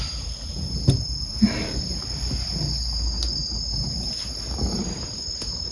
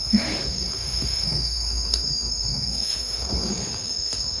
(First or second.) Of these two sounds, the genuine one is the first